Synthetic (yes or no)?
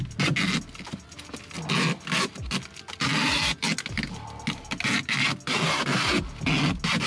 no